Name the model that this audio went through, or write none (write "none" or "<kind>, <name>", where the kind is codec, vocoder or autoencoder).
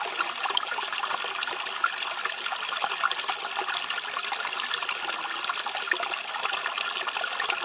none